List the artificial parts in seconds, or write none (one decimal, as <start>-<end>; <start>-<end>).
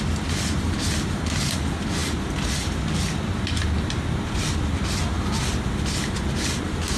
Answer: none